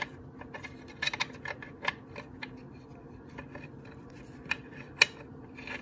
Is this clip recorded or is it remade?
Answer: recorded